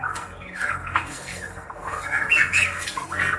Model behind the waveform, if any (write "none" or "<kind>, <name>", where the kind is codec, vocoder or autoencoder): codec, SNAC